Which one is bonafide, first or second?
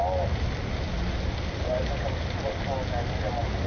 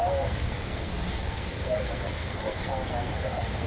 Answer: first